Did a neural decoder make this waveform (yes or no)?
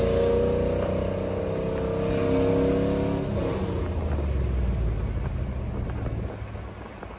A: no